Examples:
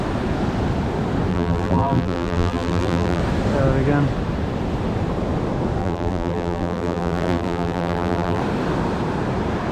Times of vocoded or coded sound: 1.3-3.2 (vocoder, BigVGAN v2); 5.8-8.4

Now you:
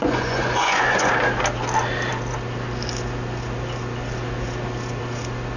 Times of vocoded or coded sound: 0.0-1.1 (vocoder, Vocos)

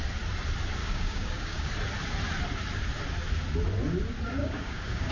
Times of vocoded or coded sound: 0.8-1.7 (codec, DAC); 4.4-5.1

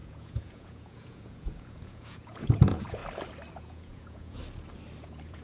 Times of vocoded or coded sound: 0.0-3.0 (vocoder, Vocos); 3.5-4.4; 5.0-5.4

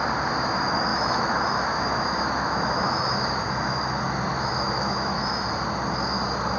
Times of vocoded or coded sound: 0.9-3.8 (autoencoder, DAC-VAE); 4.3-5.5

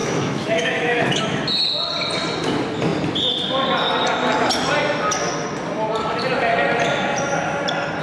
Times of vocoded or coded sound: 0.0-1.4 (autoencoder, DAC-VAE)

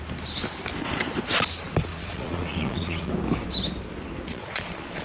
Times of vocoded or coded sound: 1.9-3.1 (vocoder, Vocos); 4.3-5.0